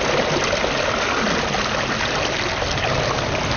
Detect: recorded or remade recorded